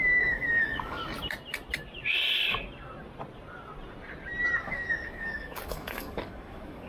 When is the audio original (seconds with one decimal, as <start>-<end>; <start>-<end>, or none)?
1.0-4.6

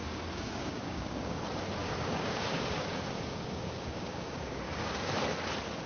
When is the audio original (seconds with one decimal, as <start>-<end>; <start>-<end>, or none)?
1.4-1.8; 5.2-5.9

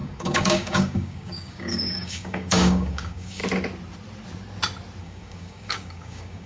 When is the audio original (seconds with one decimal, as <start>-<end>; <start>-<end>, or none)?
3.4-5.0

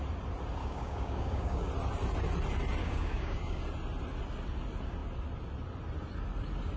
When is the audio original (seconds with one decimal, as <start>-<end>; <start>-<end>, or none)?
0.0-0.6; 1.7-2.8; 3.6-6.8

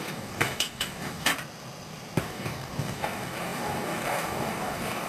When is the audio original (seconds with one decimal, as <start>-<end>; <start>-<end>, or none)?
1.3-2.2

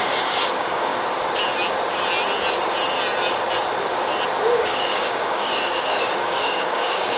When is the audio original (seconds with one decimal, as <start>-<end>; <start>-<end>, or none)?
0.9-4.5